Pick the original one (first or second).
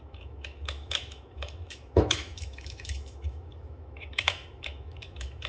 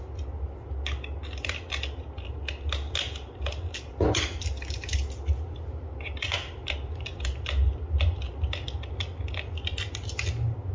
second